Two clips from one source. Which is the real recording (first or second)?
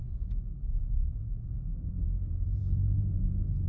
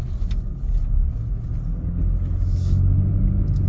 second